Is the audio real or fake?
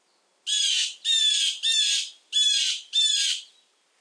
real